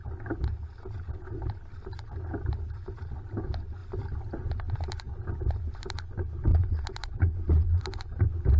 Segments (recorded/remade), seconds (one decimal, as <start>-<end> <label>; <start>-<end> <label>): 0.0-6.5 recorded; 6.5-7.8 remade; 7.8-8.6 recorded